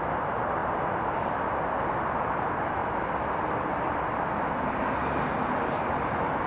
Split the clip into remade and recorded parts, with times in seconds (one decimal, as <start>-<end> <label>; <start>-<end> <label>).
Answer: 0.0-6.5 recorded